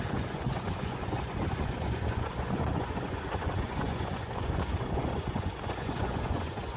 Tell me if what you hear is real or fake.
fake